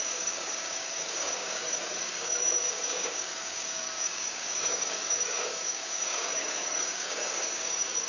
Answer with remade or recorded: remade